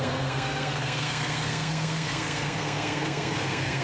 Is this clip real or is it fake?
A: fake